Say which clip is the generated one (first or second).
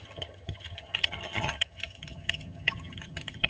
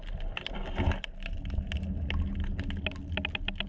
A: first